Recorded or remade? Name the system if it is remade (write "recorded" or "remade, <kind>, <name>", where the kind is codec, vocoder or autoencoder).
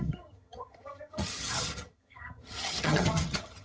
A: remade, vocoder, HiFi-GAN